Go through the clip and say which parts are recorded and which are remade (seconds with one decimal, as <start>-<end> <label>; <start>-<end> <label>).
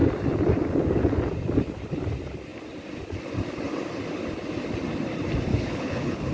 0.0-5.5 recorded; 5.5-6.3 remade